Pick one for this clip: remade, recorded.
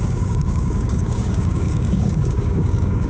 remade